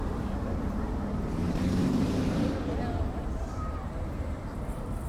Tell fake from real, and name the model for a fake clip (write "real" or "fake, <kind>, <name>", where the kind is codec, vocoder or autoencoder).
fake, vocoder, BigVGAN v2